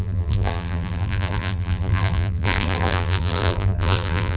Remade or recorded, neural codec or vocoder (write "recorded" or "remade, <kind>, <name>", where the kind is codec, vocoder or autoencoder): remade, vocoder, BigVGAN v2